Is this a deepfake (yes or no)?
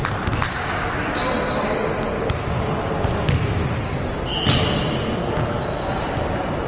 no